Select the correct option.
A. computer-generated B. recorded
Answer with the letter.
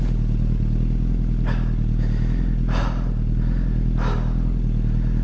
B